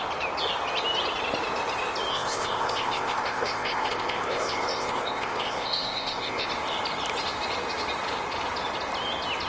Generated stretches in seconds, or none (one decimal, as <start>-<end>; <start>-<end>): 2.1-6.5